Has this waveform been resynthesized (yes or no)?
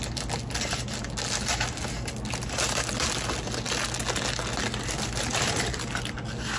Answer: no